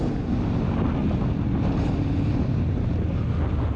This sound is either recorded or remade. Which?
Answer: recorded